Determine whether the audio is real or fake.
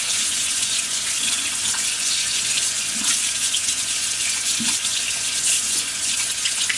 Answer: fake